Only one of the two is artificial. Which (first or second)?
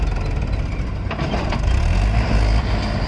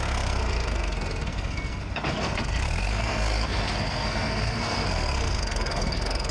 second